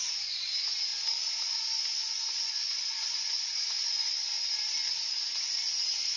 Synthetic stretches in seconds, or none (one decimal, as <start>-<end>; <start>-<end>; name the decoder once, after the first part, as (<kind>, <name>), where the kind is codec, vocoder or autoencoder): 1.9-4.3 (vocoder, Vocos)